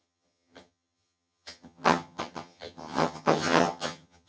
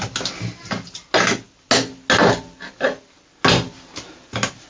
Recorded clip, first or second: second